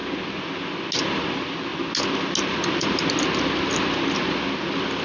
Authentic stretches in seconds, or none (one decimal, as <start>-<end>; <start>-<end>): 0.0-5.0